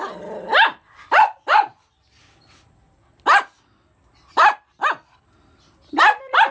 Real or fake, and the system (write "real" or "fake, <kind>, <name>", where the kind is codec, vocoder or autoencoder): real